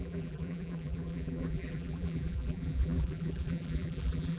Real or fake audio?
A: fake